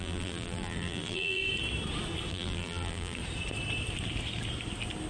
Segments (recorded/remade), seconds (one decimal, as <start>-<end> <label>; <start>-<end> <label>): 0.0-1.4 remade; 1.4-2.3 recorded; 2.3-3.2 remade; 3.2-5.1 recorded